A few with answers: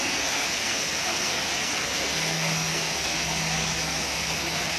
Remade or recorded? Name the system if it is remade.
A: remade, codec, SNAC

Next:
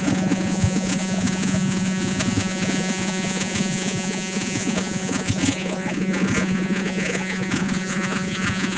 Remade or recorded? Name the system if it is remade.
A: remade, vocoder, Vocos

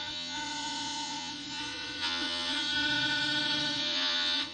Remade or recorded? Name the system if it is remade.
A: remade, vocoder, Vocos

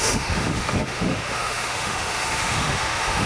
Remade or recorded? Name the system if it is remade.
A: remade, autoencoder, DAC-VAE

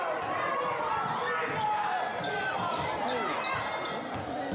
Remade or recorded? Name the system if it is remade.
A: recorded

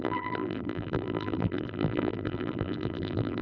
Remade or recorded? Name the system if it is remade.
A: remade, vocoder, BigVGAN v2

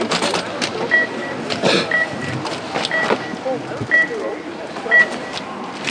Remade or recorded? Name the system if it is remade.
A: recorded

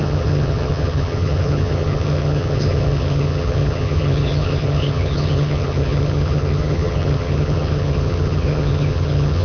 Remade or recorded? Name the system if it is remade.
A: remade, vocoder, HiFi-GAN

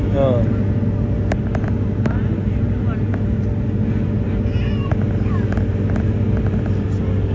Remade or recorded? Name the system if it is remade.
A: recorded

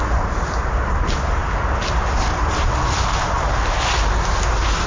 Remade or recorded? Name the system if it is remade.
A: recorded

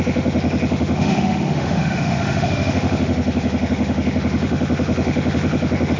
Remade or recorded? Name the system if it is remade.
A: remade, autoencoder, DAC-VAE